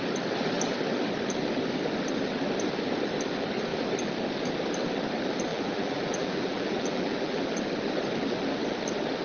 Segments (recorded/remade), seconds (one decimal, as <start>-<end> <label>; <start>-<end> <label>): 0.0-5.5 recorded; 5.5-7.4 remade; 7.4-9.2 recorded